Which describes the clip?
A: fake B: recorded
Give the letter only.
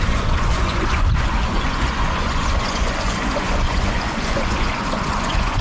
A